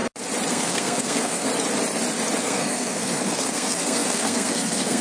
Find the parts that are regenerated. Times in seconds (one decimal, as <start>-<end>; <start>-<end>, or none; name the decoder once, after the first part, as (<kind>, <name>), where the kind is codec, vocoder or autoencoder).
0.5-1.5 (codec, SNAC); 2.4-5.0